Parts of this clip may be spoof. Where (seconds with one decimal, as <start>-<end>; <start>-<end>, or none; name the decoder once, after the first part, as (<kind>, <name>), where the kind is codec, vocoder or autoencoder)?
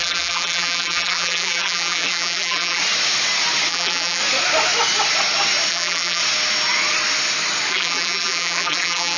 0.0-2.8 (vocoder, BigVGAN v2); 3.7-4.2; 5.7-6.2; 7.7-9.2